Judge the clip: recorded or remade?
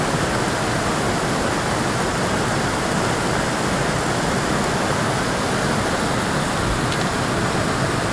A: recorded